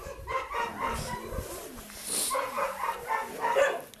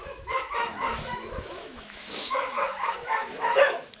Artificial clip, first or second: second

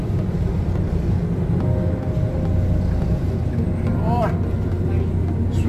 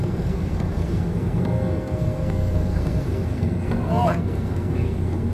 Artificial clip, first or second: second